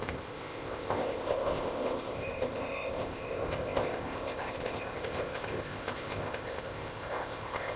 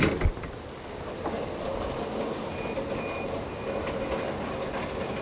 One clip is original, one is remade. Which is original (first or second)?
second